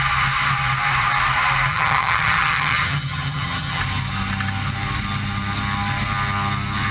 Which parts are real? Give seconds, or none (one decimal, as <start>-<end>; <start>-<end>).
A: 0.0-1.7; 3.8-6.9